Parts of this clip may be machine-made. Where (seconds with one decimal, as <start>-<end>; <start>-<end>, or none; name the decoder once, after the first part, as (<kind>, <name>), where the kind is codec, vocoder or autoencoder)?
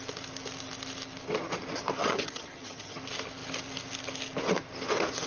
2.0-3.0 (vocoder, HiFi-GAN)